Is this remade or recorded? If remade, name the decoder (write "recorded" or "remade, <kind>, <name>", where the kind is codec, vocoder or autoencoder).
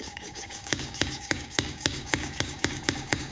remade, codec, DAC